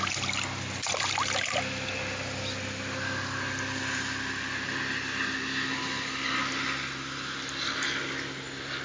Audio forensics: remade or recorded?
recorded